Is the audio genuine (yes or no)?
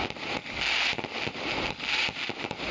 yes